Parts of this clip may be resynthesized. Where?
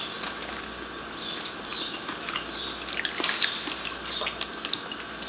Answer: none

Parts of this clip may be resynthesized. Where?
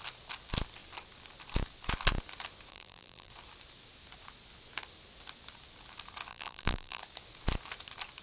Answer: 2.7-3.3 (vocoder, BigVGAN v2); 6.3-7.0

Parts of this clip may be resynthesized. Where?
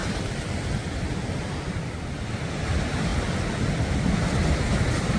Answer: none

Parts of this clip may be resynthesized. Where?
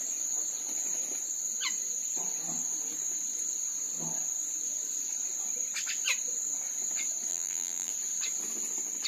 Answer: 7.3-7.9 (vocoder, BigVGAN v2)